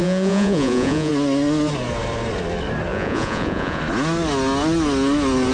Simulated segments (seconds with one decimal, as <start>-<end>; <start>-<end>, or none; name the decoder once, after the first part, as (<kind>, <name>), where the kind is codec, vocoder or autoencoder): 0.0-1.1 (vocoder, Vocos); 2.9-3.8

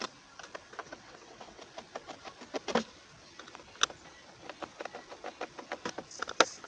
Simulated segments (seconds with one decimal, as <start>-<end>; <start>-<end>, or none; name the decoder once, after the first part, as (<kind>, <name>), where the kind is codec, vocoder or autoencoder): 0.8-1.6 (vocoder, WaveNeXt)

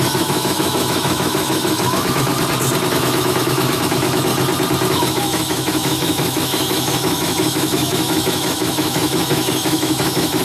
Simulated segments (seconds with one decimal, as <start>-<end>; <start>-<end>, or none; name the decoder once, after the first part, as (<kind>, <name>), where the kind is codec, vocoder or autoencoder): 0.0-2.3 (autoencoder, DAC-VAE); 2.9-4.3; 4.9-10.4

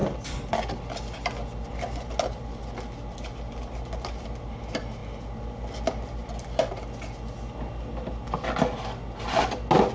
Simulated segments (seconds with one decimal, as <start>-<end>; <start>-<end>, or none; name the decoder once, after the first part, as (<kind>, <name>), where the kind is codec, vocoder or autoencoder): none